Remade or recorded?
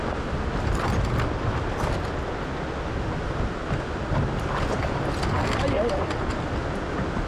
recorded